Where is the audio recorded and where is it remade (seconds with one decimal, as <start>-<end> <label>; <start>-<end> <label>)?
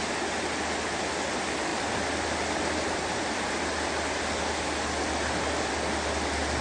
0.0-6.6 recorded